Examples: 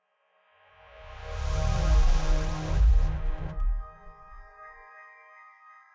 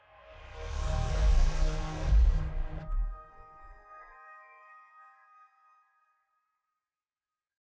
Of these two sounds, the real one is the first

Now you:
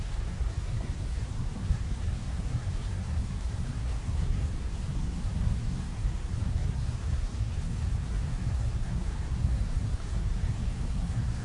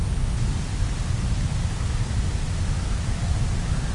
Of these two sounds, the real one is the second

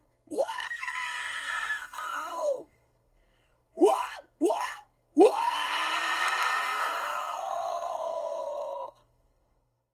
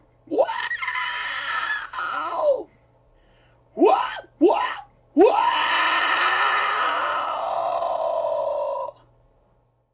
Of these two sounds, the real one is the second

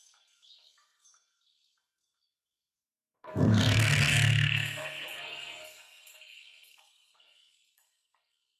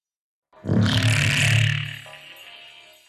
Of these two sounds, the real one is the second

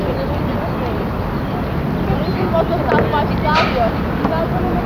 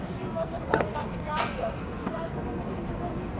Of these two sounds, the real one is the first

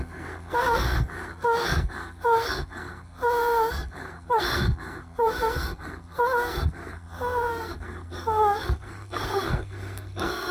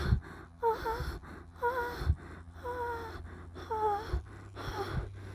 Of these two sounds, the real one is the second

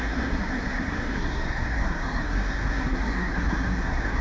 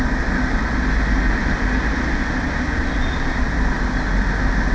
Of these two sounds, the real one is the second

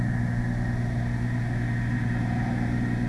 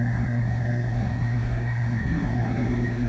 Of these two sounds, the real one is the first